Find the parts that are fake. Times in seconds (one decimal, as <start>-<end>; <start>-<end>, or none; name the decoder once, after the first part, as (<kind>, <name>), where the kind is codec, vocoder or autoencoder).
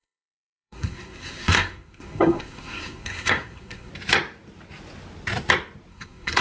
0.0-3.9 (codec, SNAC); 5.9-6.4